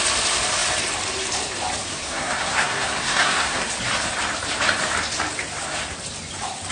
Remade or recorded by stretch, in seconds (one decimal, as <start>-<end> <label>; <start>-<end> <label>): 0.0-1.9 recorded; 1.9-3.7 remade; 3.7-6.7 recorded